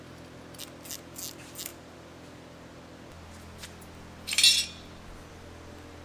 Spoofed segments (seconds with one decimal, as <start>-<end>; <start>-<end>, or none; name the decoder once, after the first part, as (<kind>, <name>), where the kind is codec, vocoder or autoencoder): none